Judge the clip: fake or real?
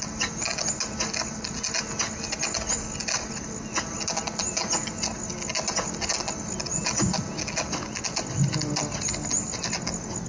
real